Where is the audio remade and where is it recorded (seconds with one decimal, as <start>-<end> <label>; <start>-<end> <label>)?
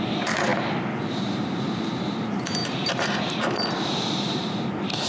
0.0-0.5 recorded; 0.5-1.7 remade; 1.7-2.6 recorded; 2.6-4.1 remade; 4.1-5.1 recorded